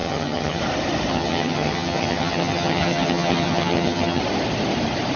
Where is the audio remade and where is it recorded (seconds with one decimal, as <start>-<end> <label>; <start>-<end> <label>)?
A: 0.0-0.6 remade; 0.6-1.1 recorded; 1.1-4.2 remade; 4.2-5.2 recorded